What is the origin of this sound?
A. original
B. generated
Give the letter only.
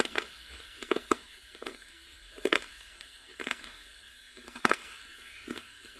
B